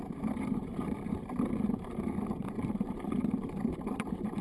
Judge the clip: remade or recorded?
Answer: remade